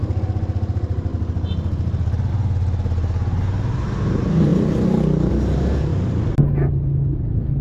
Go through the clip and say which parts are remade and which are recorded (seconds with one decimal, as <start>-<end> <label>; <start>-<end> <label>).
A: 0.0-7.6 recorded